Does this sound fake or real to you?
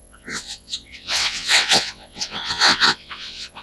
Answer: fake